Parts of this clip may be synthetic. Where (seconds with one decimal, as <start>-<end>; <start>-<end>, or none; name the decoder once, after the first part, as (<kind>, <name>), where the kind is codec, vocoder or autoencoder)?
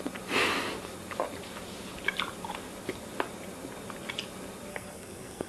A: 4.7-5.5 (codec, SNAC)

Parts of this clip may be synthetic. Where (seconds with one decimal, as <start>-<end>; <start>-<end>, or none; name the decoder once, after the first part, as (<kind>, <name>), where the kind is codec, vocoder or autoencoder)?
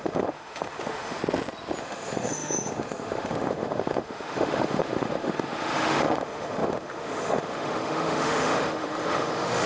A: 0.0-1.2 (autoencoder, DAC-VAE); 1.8-9.7